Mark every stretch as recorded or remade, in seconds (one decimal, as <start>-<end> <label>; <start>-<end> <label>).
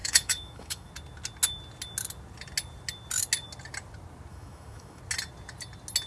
0.0-0.9 remade; 0.9-4.3 recorded; 4.3-5.0 remade; 5.0-6.1 recorded